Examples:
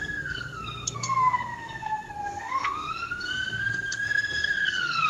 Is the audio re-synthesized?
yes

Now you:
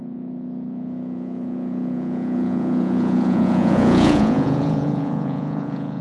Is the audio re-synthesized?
yes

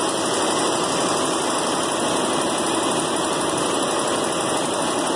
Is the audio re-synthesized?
no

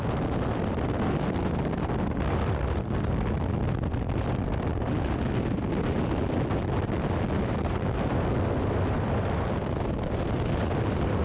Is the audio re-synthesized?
no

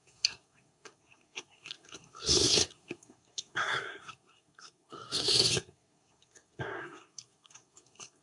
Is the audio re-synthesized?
yes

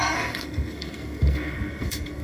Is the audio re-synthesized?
yes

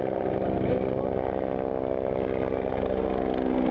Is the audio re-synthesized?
no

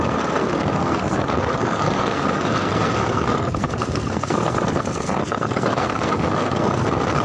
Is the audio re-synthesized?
yes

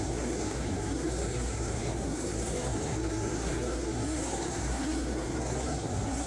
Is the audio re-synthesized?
yes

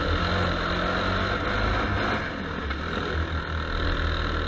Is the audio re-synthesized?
no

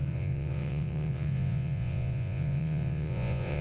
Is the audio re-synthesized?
yes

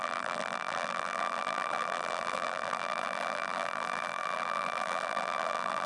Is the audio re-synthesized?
yes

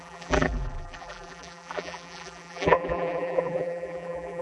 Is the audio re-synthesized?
yes